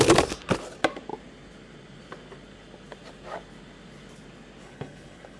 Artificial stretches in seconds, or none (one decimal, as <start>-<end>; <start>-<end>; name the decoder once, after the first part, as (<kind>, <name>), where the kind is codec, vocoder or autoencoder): 4.6-5.4 (codec, HILCodec)